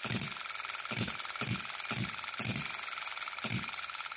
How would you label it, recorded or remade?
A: recorded